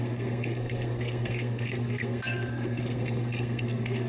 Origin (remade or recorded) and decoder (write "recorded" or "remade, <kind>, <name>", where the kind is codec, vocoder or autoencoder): remade, codec, SNAC